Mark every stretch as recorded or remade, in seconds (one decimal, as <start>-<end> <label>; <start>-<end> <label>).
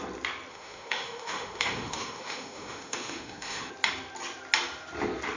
0.0-0.5 recorded; 0.5-3.7 remade; 3.7-5.4 recorded